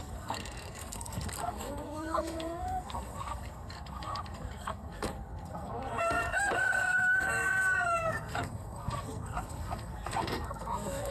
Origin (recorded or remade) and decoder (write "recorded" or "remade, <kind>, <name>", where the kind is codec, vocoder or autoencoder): remade, codec, SNAC